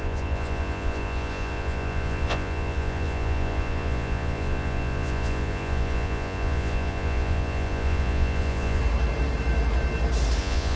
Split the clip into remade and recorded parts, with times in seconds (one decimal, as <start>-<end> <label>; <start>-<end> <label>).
0.0-8.8 remade; 8.8-10.4 recorded; 10.4-10.8 remade

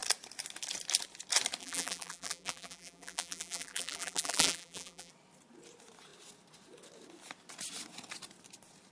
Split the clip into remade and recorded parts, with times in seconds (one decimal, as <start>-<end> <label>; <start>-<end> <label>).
0.0-1.6 recorded; 1.6-5.1 remade; 5.1-8.9 recorded

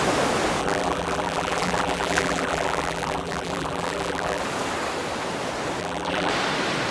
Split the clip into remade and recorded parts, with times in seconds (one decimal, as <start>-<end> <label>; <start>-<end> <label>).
0.0-0.6 recorded; 0.6-4.4 remade; 4.4-5.8 recorded; 5.8-6.3 remade; 6.3-6.9 recorded

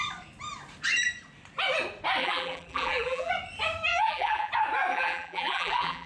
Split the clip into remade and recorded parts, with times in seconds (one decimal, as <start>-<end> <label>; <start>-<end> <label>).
0.0-2.2 recorded; 2.2-3.3 remade; 3.3-3.9 recorded; 3.9-4.5 remade; 4.5-4.9 recorded; 4.9-6.1 remade

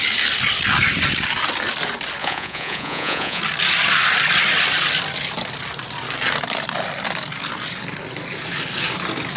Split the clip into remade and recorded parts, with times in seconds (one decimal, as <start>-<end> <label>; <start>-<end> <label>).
0.0-2.2 recorded; 2.2-3.4 remade; 3.4-9.4 recorded

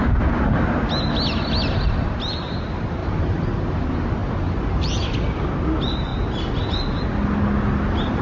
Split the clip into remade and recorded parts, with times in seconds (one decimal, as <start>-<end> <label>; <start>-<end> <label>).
0.0-3.0 recorded; 3.0-3.8 remade; 3.8-4.2 recorded; 4.2-5.1 remade; 5.1-8.2 recorded

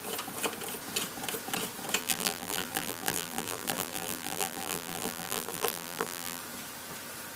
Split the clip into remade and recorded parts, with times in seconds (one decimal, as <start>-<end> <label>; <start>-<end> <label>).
0.0-2.0 recorded; 2.0-6.4 remade; 6.4-7.4 recorded